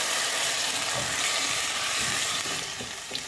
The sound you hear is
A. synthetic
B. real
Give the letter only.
A